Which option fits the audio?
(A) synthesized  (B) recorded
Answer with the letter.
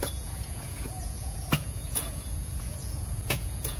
A